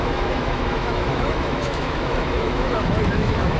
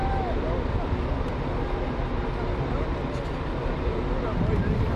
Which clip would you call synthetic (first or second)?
first